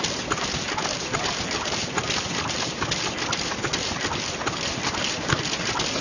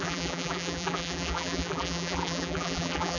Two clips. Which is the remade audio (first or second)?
second